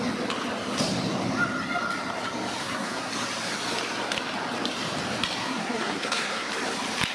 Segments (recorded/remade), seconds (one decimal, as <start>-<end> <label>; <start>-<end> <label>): 0.0-2.6 recorded; 2.6-3.1 remade; 3.1-5.4 recorded; 5.4-6.5 remade; 6.5-7.1 recorded